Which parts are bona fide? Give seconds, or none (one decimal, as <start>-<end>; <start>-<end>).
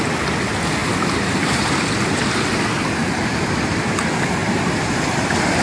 0.0-0.8; 1.9-3.0; 3.8-4.4